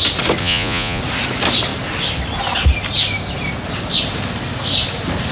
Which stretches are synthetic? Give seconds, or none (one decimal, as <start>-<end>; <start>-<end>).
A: 0.4-1.0